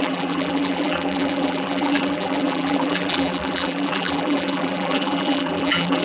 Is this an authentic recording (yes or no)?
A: no